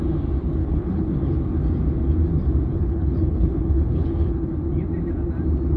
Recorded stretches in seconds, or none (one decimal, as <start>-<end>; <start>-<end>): 0.0-0.6; 1.1-2.7; 4.5-5.8